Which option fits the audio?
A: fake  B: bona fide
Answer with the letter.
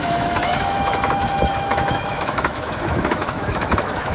A